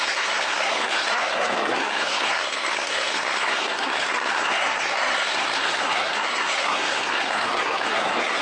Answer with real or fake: fake